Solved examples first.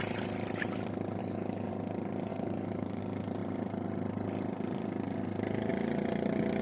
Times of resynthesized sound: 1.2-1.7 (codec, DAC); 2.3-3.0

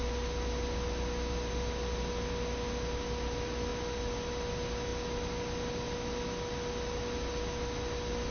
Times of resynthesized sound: none

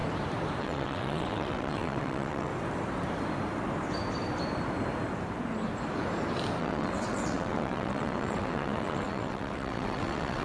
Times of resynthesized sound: 0.6-2.5 (vocoder, WaveNeXt); 6.6-10.4